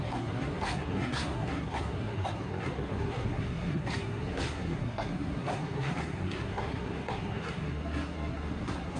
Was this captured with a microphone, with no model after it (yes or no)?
no